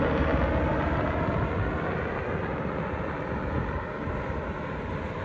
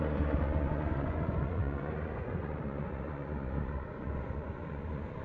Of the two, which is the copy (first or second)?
second